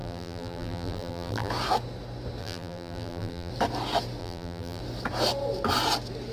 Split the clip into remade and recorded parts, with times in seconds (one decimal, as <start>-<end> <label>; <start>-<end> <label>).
0.0-1.5 remade; 1.5-2.4 recorded; 2.4-3.5 remade; 3.5-4.2 recorded; 4.2-4.8 remade; 4.8-6.3 recorded